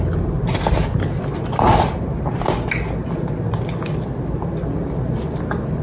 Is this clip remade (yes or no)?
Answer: no